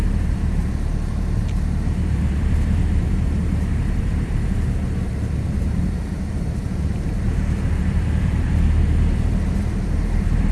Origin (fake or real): fake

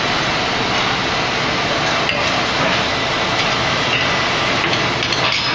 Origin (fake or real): real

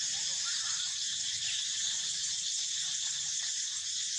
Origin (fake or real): fake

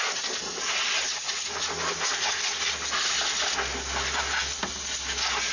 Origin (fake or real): real